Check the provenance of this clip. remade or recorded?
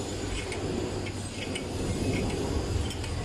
recorded